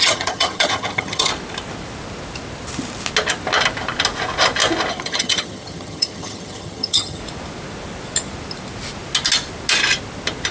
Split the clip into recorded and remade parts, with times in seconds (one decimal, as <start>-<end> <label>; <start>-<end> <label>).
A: 0.0-1.3 remade; 1.3-4.9 recorded; 4.9-7.2 remade; 7.2-10.5 recorded